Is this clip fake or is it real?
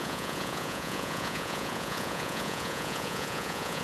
fake